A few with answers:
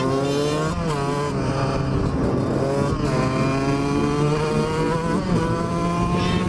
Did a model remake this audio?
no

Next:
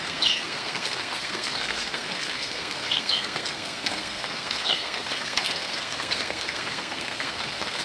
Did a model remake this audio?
yes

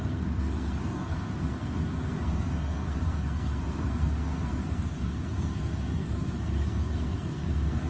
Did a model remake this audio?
yes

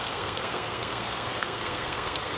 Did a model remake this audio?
yes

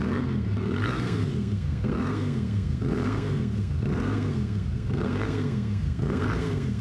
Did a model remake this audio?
yes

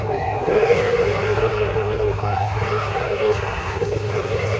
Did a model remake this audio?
yes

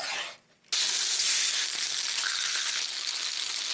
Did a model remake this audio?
no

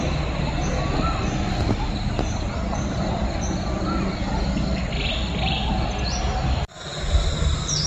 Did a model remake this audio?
no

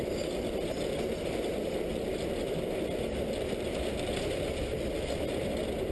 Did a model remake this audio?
no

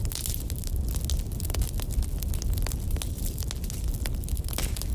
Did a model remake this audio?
no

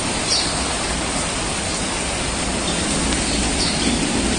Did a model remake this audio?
no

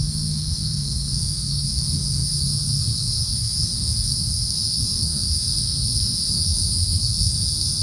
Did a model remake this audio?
yes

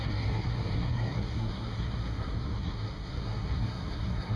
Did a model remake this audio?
yes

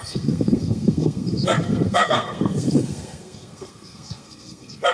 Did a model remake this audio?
yes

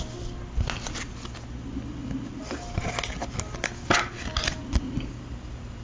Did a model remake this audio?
no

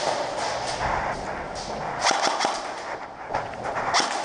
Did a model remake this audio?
no